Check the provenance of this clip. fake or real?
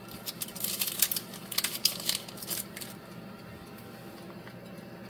real